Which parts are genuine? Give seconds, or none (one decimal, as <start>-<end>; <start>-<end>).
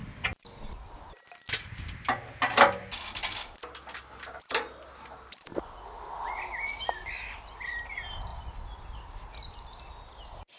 0.0-10.6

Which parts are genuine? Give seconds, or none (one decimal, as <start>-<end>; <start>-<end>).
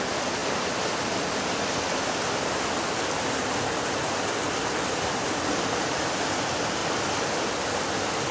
0.0-8.3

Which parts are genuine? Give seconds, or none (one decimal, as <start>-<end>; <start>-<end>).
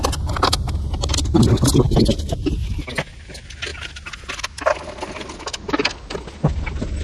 0.0-7.0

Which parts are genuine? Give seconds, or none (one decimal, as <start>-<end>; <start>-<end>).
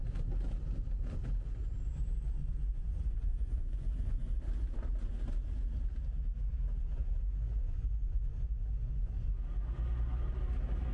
0.0-2.4; 4.3-7.0; 9.3-10.9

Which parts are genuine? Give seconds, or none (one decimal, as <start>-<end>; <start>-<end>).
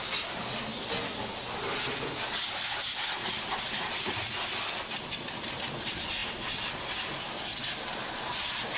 0.0-8.8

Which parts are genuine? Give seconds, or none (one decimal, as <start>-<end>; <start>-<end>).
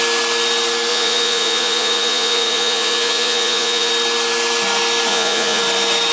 0.0-0.9; 3.9-5.1; 5.6-6.1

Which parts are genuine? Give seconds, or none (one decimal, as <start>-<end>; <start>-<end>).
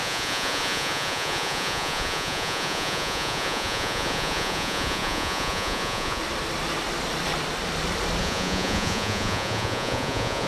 6.2-8.2